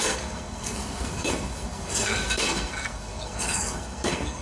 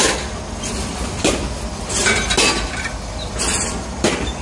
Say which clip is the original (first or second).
second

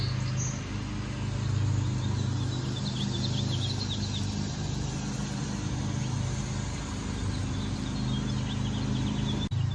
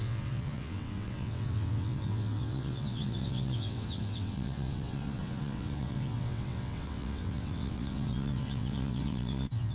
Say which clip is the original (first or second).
first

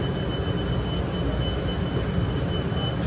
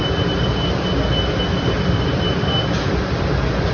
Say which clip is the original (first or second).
first